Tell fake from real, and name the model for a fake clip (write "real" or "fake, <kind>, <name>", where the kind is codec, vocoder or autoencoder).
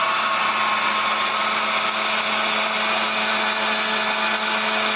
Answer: real